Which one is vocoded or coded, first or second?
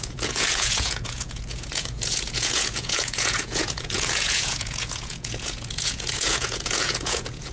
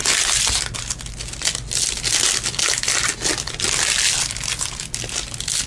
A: first